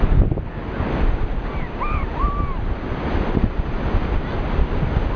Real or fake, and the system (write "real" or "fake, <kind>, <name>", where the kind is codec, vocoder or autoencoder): real